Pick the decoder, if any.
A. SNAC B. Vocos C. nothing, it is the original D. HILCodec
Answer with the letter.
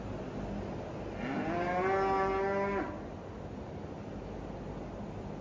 C